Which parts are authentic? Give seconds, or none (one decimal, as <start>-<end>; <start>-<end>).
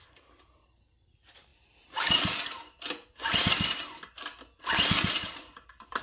1.5-5.1